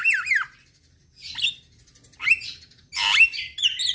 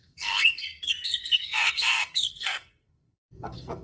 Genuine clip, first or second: first